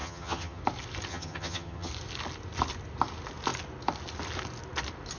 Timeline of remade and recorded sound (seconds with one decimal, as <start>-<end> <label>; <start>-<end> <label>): 0.0-0.6 remade; 0.6-1.1 recorded; 1.1-1.9 remade; 1.9-5.2 recorded